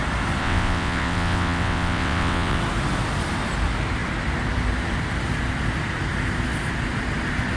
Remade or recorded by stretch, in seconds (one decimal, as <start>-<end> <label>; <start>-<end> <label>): 0.0-0.4 recorded; 0.4-2.6 remade; 2.6-7.6 recorded